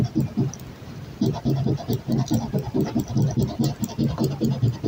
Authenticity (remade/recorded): recorded